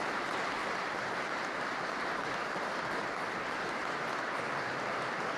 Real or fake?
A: real